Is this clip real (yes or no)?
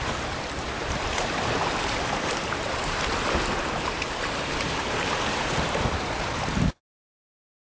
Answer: no